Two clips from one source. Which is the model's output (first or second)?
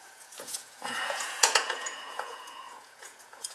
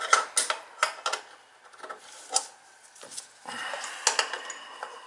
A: first